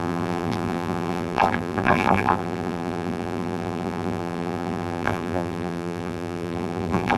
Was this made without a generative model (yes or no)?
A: no